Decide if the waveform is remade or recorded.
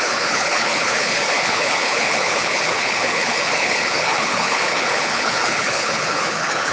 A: remade